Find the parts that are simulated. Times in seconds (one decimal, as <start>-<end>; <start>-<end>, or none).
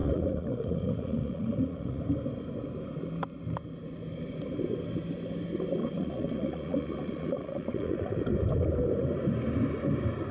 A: 0.0-2.0; 5.8-8.2